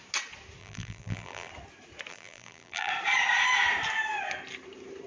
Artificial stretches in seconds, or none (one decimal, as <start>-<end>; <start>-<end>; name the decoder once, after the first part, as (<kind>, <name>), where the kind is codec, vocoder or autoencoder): 0.6-1.5 (vocoder, BigVGAN v2); 2.1-2.9